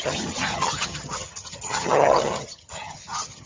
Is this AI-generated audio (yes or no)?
yes